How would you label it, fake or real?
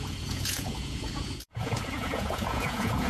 fake